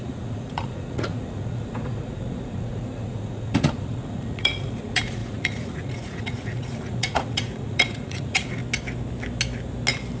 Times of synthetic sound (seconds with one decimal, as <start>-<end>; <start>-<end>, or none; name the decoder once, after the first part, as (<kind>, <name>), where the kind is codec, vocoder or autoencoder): 0.0-8.6 (vocoder, Vocos)